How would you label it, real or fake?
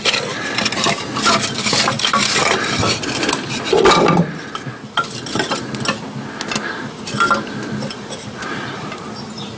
real